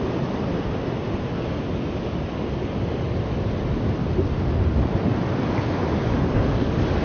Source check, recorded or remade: recorded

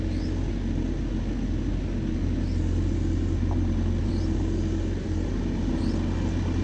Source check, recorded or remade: recorded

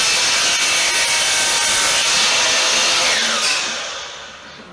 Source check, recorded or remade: recorded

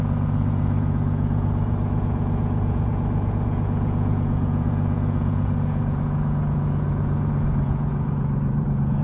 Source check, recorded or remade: remade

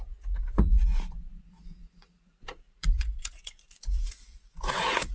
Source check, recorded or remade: remade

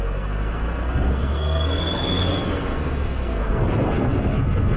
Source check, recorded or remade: remade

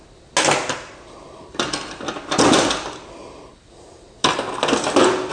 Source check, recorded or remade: recorded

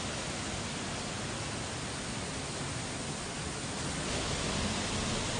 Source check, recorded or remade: recorded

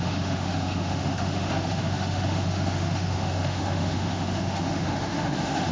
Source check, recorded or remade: remade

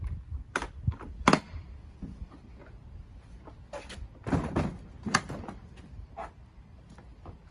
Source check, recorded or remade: recorded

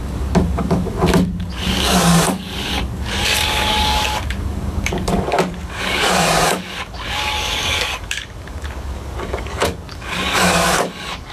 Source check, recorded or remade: remade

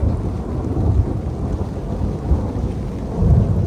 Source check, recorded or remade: recorded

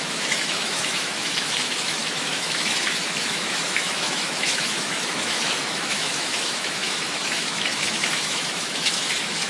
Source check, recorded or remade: remade